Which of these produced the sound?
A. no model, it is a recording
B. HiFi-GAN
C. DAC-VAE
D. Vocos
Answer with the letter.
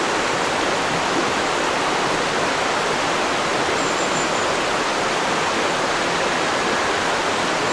A